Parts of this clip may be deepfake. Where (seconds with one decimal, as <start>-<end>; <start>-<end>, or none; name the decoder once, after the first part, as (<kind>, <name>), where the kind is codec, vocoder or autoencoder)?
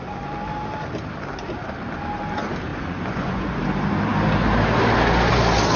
2.7-3.6 (vocoder, Vocos)